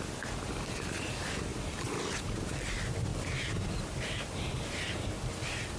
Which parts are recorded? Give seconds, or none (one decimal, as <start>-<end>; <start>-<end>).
0.0-3.1; 3.8-5.8